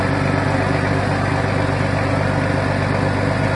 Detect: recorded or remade recorded